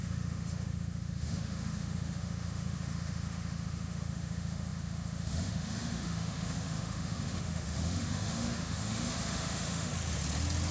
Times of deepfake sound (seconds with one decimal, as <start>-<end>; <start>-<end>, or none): 0.0-9.9

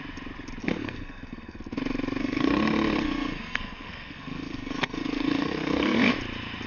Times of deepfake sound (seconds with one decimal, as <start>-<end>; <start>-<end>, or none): 0.6-1.6; 2.2-6.1

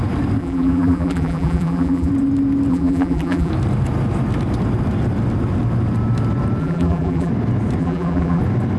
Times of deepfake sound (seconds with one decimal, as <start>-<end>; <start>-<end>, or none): 0.4-2.1; 2.7-3.5; 6.6-7.3; 7.8-8.4

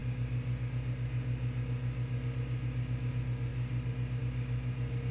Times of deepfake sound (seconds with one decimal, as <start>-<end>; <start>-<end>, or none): none

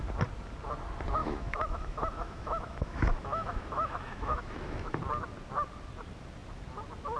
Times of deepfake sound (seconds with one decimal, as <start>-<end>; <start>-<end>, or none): 1.2-5.0

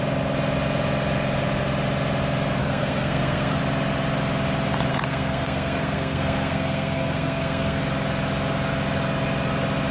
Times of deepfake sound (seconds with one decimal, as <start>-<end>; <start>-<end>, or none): 2.6-3.6; 4.9-7.8